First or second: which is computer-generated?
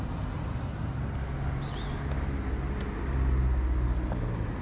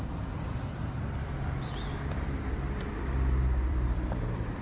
second